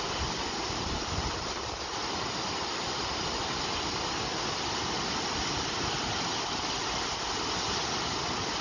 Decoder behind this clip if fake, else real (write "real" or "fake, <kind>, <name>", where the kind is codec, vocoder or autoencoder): real